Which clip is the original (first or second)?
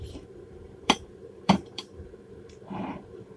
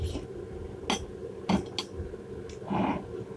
second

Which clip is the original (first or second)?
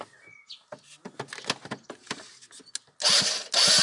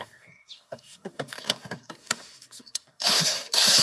first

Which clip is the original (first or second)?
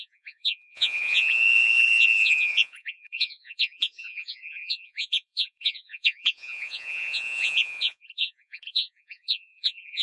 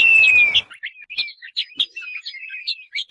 second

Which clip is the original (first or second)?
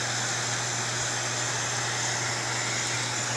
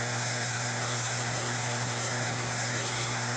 first